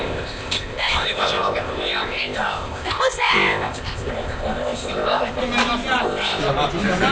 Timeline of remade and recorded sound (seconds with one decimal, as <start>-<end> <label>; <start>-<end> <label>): 0.0-5.4 remade; 5.4-6.0 recorded; 6.0-6.4 remade; 6.4-7.1 recorded

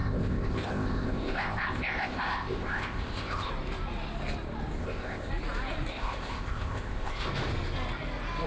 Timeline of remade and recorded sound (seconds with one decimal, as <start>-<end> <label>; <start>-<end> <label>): 0.0-3.5 remade; 3.5-4.8 recorded; 4.8-5.3 remade; 5.3-5.9 recorded; 5.9-7.3 remade; 7.3-8.5 recorded

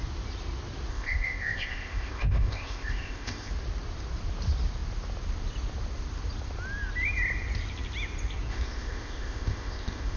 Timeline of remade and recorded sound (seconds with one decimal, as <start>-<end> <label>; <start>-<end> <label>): 0.0-0.9 recorded; 0.9-3.5 remade; 3.5-8.5 recorded; 8.5-10.2 remade